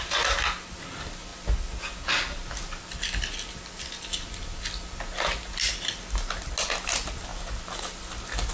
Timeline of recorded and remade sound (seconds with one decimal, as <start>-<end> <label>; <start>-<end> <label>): 0.0-8.5 recorded